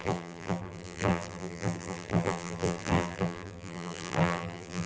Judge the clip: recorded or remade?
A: remade